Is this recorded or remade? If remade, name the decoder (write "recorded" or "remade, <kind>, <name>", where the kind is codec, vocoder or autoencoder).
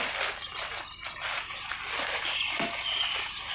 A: recorded